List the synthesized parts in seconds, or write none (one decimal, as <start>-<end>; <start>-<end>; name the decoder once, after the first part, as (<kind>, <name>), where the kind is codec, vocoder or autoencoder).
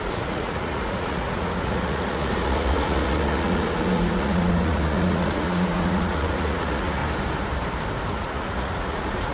0.0-7.0 (vocoder, Vocos); 8.1-9.3